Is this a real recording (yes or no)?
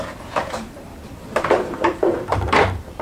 no